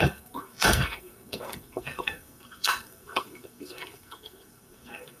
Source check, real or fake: fake